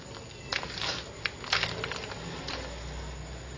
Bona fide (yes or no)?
yes